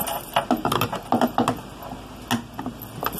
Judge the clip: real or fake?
real